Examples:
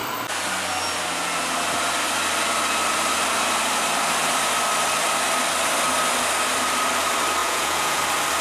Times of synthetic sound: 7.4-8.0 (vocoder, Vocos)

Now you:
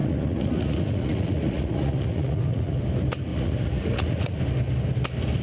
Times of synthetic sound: 0.0-2.8 (vocoder, Vocos); 3.3-4.4